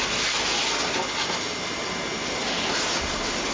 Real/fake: real